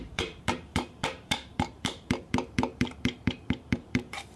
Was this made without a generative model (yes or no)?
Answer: no